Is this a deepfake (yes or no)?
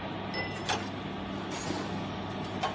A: no